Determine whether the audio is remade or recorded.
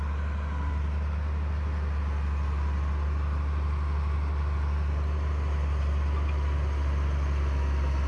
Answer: recorded